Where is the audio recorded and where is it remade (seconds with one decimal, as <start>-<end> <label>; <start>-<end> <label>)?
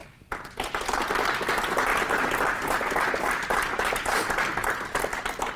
0.0-5.6 recorded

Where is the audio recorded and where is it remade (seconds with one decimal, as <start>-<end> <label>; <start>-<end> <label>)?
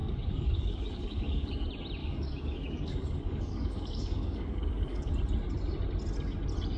0.0-1.5 remade; 1.5-2.0 recorded; 2.0-5.1 remade; 5.1-6.8 recorded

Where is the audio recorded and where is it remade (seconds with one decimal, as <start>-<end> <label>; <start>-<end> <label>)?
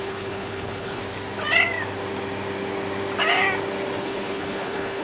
0.0-1.0 remade; 1.0-4.0 recorded; 4.0-5.0 remade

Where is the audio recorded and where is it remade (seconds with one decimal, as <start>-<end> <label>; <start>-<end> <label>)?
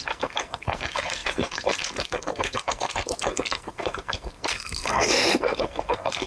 0.0-6.3 remade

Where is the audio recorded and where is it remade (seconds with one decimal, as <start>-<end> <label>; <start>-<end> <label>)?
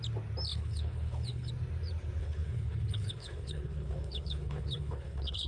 0.0-0.5 recorded; 0.5-1.5 remade; 1.5-2.2 recorded; 2.2-5.5 remade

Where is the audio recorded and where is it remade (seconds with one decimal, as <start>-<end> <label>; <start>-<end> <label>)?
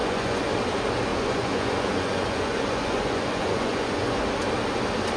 0.0-0.5 remade; 0.5-1.1 recorded; 1.1-4.2 remade; 4.2-5.2 recorded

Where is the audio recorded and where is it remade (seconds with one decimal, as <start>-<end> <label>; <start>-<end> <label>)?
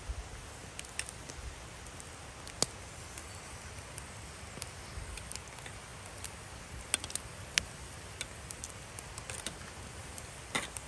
0.0-10.9 recorded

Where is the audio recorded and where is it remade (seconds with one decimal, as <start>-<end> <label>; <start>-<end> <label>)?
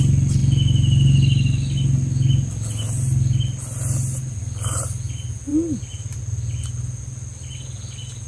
0.0-8.3 recorded